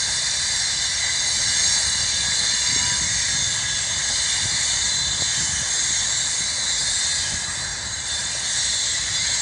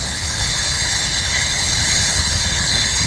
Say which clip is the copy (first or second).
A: second